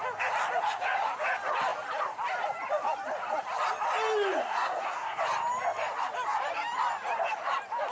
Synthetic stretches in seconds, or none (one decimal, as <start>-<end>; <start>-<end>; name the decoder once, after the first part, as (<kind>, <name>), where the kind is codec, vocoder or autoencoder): 4.4-5.2 (codec, SNAC)